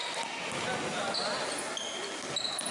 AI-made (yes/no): no